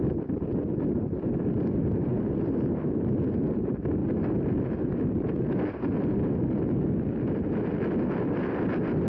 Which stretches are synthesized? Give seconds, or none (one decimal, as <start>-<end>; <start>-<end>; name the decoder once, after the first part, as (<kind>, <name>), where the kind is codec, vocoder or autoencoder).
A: none